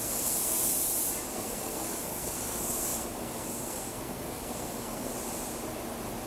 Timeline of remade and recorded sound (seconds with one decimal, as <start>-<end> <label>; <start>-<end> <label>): 0.0-0.7 remade; 0.7-1.3 recorded; 1.3-5.1 remade; 5.1-6.3 recorded